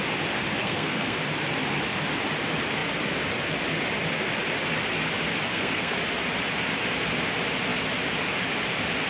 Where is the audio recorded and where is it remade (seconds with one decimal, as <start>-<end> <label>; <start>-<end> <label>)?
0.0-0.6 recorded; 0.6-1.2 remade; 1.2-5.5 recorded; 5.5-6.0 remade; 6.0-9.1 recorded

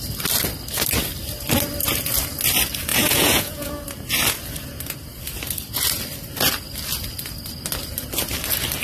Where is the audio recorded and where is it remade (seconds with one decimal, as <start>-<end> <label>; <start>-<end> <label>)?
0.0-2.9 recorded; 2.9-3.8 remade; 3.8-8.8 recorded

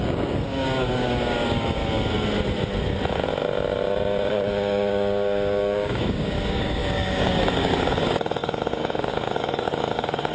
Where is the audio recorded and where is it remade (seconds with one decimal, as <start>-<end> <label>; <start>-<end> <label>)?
0.0-1.8 remade; 1.8-4.3 recorded; 4.3-10.3 remade